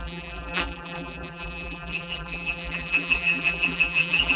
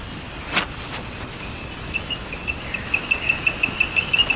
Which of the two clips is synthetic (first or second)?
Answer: first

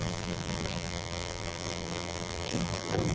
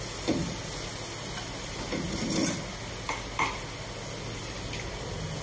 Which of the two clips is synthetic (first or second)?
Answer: first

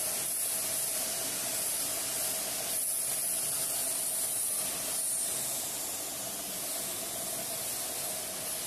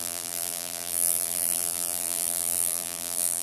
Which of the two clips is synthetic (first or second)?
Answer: second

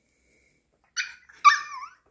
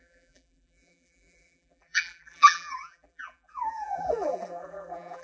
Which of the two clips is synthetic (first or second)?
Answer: second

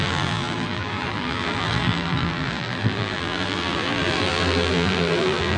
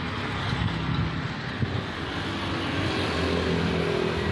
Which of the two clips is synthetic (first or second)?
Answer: first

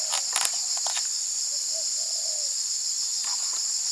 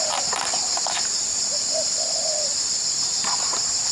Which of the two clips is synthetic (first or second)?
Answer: second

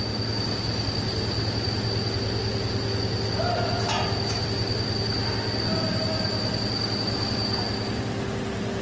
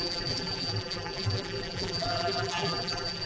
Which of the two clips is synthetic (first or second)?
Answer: second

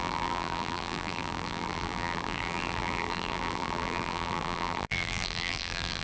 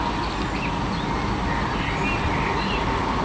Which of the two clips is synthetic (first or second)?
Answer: first